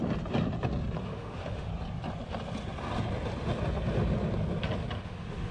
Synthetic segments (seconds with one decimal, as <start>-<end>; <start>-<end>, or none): 1.0-1.7; 5.0-5.5